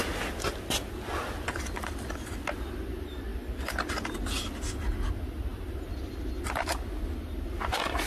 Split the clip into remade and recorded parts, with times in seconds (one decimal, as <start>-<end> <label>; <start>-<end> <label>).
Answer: 0.0-8.1 recorded